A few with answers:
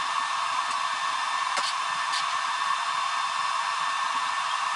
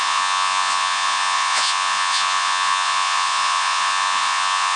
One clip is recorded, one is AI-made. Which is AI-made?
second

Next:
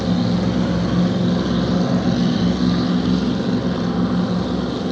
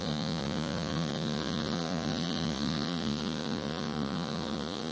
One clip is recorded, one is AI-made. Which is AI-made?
second